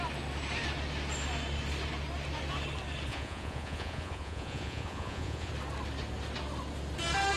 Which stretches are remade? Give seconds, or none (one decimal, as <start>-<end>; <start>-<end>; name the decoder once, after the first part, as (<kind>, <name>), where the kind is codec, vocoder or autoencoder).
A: 3.1-5.5 (vocoder, Vocos)

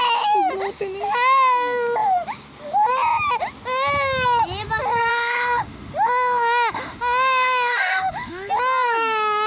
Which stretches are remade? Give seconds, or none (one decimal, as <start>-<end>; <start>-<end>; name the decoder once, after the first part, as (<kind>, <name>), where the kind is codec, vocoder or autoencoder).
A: 5.1-8.5 (autoencoder, DAC-VAE)

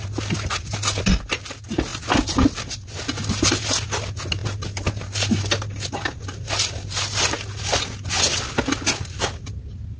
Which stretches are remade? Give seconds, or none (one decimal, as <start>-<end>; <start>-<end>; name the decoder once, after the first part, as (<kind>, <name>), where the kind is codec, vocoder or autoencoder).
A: none

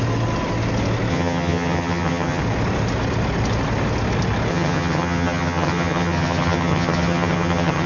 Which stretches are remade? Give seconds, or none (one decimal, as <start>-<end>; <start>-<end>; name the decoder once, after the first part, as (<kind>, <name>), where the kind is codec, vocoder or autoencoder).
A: 1.1-2.4 (vocoder, HiFi-GAN); 4.5-7.9

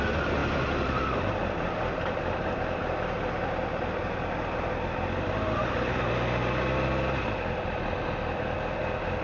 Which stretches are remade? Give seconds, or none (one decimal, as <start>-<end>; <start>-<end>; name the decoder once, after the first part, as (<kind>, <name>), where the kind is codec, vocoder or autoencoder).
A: none

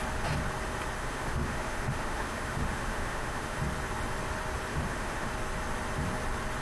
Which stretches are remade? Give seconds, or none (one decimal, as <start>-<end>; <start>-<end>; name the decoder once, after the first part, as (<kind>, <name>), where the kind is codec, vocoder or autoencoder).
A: 1.0-3.6 (autoencoder, DAC-VAE); 4.7-5.3

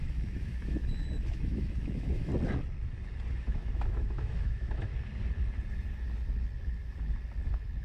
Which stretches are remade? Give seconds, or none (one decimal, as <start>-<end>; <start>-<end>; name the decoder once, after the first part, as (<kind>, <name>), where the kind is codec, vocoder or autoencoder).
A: 0.0-2.3 (autoencoder, DAC-VAE); 3.3-4.9

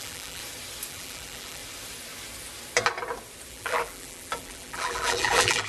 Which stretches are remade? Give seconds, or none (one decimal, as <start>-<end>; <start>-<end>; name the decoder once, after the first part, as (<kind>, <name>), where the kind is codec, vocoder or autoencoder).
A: 0.0-0.4 (vocoder, BigVGAN v2); 0.9-1.6; 3.5-5.7